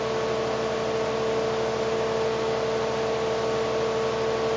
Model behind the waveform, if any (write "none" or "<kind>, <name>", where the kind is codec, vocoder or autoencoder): none